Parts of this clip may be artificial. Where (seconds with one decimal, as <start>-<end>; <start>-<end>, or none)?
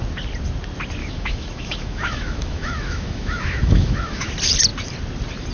1.0-4.3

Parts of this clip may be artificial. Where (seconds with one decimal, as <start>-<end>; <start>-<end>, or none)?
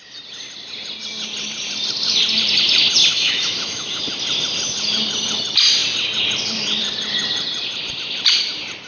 3.1-4.0